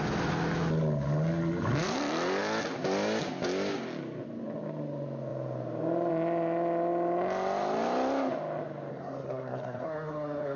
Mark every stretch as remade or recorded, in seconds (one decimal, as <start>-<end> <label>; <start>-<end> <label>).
0.0-8.9 recorded; 8.9-10.6 remade